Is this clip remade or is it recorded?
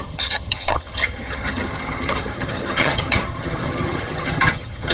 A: remade